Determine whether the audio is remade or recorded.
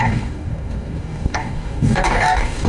remade